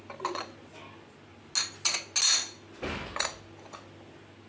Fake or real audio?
real